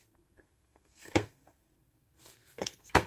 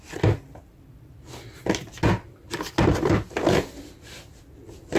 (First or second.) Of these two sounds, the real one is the second